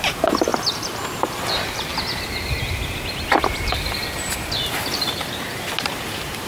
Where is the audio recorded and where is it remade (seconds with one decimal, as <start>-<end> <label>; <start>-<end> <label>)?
0.0-0.5 remade; 0.5-1.2 recorded; 1.2-1.9 remade; 1.9-5.8 recorded; 5.8-6.5 remade